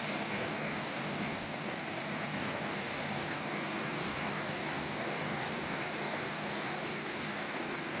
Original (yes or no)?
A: no